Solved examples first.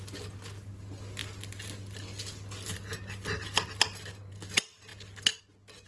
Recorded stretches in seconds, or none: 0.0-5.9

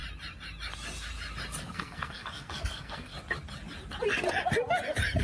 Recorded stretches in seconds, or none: 0.0-1.6; 3.1-5.2

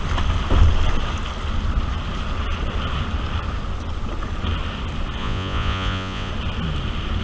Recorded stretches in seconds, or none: 0.0-5.2; 6.3-7.2

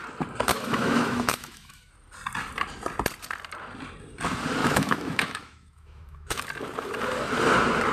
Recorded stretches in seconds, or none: 0.0-0.5; 1.9-4.6; 6.4-7.9